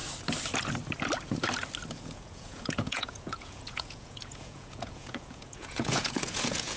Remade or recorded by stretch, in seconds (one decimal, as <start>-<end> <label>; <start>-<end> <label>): 0.0-1.9 recorded; 1.9-6.8 remade